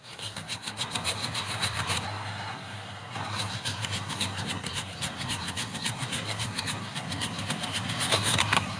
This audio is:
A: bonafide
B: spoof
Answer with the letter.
B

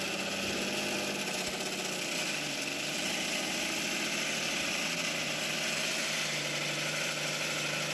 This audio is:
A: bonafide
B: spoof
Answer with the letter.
A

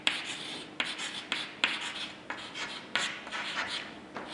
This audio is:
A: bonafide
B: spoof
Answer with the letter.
A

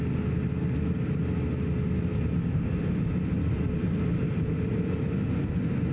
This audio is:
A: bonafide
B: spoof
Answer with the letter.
A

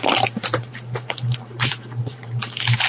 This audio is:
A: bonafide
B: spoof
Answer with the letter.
B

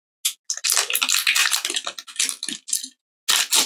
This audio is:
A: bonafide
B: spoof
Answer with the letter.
A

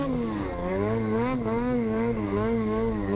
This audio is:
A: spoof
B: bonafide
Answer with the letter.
A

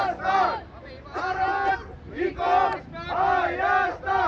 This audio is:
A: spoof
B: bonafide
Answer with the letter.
B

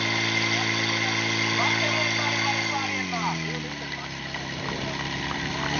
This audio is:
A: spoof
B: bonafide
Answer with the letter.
B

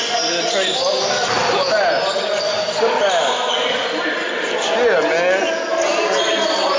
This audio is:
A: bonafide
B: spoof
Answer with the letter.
A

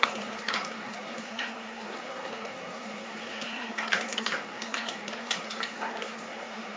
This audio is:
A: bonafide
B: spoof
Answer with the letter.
B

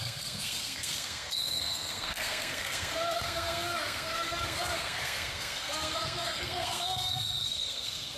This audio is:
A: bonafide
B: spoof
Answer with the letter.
B